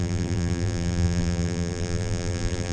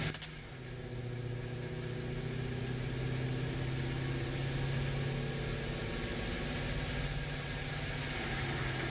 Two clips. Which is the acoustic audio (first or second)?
second